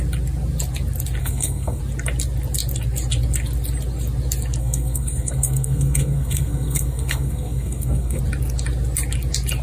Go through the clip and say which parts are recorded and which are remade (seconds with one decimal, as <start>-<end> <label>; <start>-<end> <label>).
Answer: 0.0-1.2 recorded; 1.2-1.8 remade; 1.8-4.6 recorded; 4.6-8.2 remade; 8.2-9.6 recorded